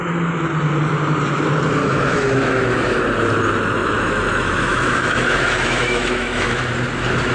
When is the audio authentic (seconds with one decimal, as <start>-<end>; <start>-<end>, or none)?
0.0-1.8; 3.0-3.8; 6.7-7.3